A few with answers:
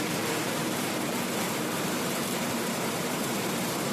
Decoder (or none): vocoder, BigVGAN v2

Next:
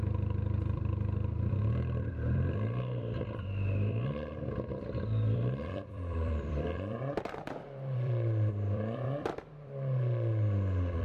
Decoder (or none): vocoder, BigVGAN v2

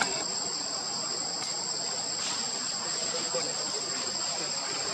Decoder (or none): none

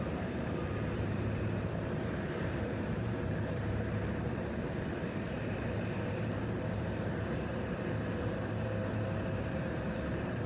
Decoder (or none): vocoder, BigVGAN v2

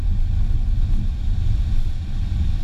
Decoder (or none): vocoder, BigVGAN v2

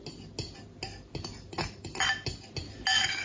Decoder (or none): none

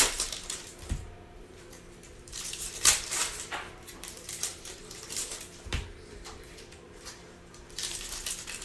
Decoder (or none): vocoder, BigVGAN v2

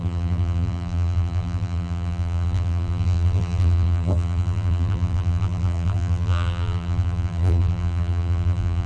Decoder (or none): vocoder, BigVGAN v2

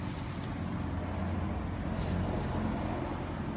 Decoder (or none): none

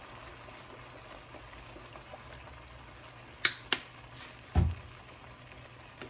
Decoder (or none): none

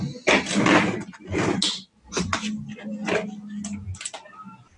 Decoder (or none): none